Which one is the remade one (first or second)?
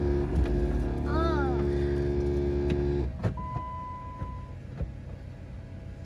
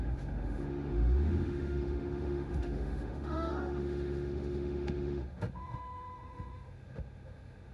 second